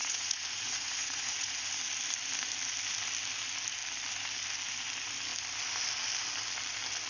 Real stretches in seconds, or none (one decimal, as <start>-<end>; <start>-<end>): 1.7-7.1